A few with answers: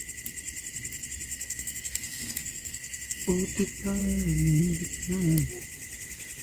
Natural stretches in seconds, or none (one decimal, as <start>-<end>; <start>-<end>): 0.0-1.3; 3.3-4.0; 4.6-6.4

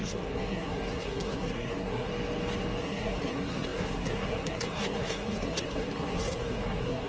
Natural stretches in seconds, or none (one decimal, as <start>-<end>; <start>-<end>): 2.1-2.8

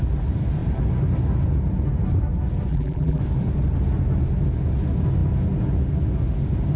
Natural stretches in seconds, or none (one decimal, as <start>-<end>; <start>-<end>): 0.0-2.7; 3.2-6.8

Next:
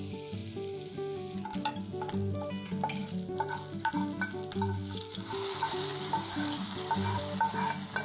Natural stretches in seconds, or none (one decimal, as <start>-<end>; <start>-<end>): 0.0-5.9; 7.2-8.0

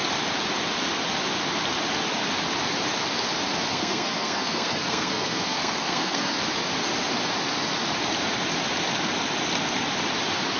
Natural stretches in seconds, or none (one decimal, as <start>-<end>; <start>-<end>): 0.0-3.7; 6.4-10.6

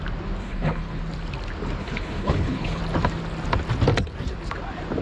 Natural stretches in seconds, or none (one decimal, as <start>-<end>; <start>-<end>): 0.0-0.4; 1.0-1.8; 2.8-5.0